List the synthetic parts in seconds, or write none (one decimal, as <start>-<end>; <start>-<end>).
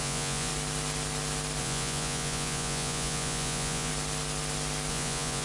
0.0-0.5; 1.6-3.9; 4.9-5.4